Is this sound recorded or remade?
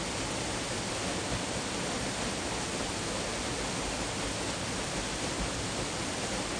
recorded